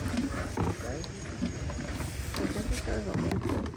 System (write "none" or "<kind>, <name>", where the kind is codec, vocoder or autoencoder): none